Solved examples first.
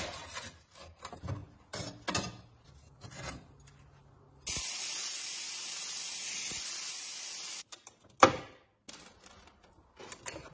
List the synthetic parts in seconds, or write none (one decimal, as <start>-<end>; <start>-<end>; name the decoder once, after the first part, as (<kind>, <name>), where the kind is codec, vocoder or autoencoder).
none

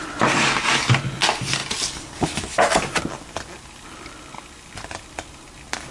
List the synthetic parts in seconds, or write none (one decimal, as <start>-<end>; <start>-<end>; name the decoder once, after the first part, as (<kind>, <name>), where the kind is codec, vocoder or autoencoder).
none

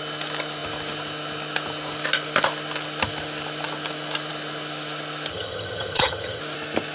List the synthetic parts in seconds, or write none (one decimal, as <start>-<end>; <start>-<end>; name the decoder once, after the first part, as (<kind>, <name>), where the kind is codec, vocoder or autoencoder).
5.3-6.4 (vocoder, HiFi-GAN)